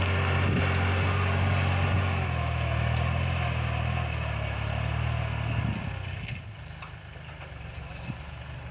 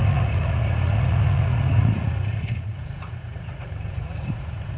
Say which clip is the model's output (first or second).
second